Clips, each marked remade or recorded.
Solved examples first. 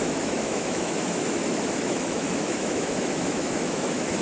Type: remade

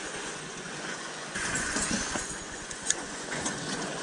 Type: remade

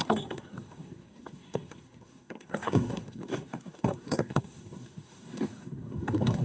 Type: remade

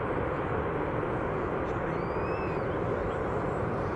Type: recorded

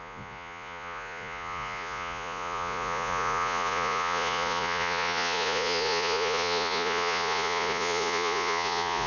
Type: remade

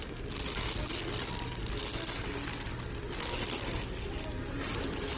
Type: recorded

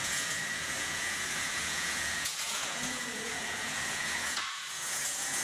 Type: remade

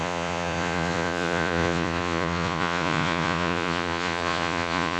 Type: remade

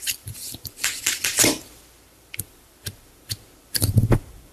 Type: remade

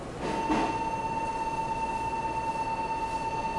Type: recorded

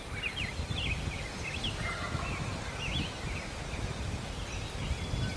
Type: recorded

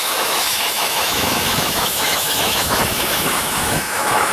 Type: remade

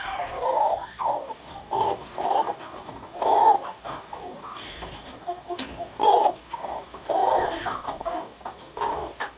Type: remade